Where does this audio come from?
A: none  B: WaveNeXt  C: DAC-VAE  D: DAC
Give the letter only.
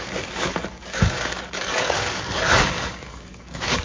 D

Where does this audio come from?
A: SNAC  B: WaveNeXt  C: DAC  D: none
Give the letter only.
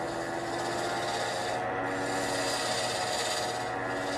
D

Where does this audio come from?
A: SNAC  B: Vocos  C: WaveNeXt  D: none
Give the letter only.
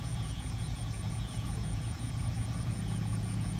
B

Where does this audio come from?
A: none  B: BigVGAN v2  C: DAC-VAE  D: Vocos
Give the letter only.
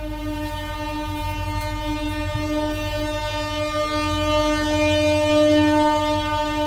A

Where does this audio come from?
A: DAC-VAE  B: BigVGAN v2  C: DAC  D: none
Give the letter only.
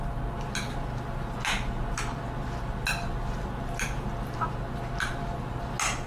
D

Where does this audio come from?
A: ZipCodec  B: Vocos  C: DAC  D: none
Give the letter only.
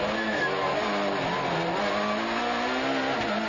D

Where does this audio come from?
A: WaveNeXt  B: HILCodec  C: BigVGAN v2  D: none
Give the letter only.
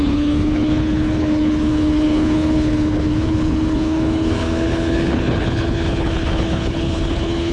B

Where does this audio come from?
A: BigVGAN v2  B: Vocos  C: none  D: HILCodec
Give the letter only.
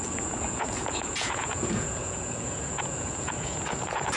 B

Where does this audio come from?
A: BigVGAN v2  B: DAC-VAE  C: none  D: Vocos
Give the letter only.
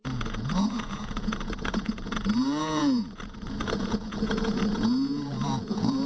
D